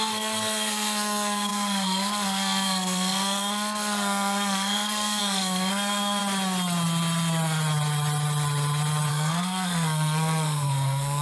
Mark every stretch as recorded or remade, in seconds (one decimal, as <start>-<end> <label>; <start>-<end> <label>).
0.0-6.2 remade; 6.2-9.1 recorded; 9.1-11.2 remade

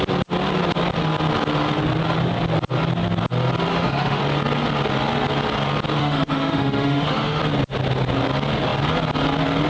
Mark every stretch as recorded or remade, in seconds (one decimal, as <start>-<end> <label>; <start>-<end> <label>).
0.0-3.7 recorded; 3.7-4.2 remade; 4.2-6.0 recorded; 6.0-7.4 remade; 7.4-9.7 recorded

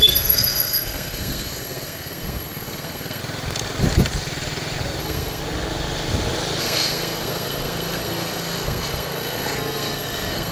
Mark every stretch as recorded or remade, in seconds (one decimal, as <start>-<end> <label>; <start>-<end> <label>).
0.0-3.2 remade; 3.2-5.0 recorded; 5.0-5.4 remade; 5.4-6.6 recorded; 6.6-10.5 remade

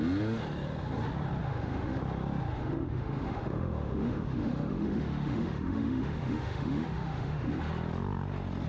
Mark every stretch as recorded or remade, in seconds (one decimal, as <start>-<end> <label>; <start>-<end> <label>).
0.0-1.4 recorded; 1.4-2.0 remade; 2.0-2.6 recorded; 2.6-7.5 remade; 7.5-8.7 recorded

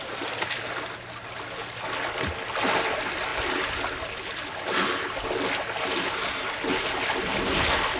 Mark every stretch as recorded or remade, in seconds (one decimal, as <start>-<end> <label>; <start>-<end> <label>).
0.0-8.0 recorded

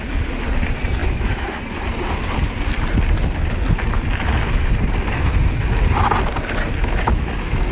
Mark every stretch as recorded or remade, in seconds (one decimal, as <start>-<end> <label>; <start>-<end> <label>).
0.0-1.0 recorded; 1.0-1.6 remade; 1.6-6.8 recorded; 6.8-7.3 remade; 7.3-7.7 recorded

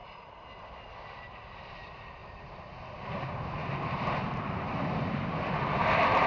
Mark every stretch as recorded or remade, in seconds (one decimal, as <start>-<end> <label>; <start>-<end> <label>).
0.0-2.2 remade; 2.2-3.9 recorded; 3.9-6.3 remade

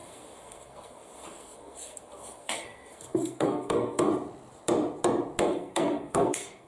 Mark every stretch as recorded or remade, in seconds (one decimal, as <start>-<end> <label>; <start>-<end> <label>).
0.0-4.1 remade; 4.1-5.4 recorded; 5.4-6.7 remade